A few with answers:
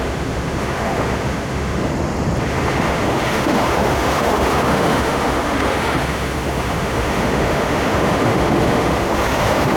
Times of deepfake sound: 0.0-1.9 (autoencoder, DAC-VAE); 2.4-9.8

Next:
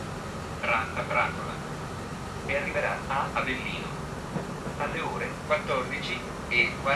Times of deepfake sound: 0.9-1.5 (autoencoder, DAC-VAE)